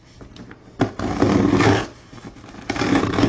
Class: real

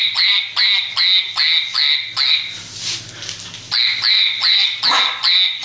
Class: real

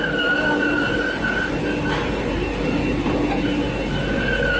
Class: real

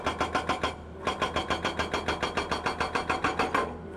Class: real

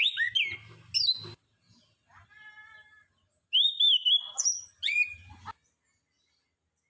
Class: real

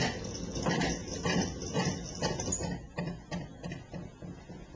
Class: real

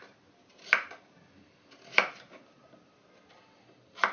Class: real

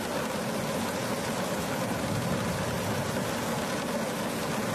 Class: real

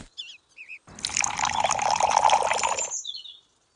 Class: real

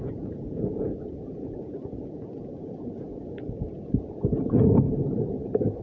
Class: fake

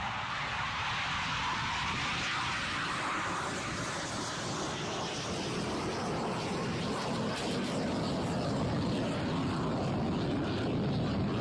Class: real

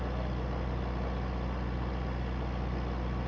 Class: real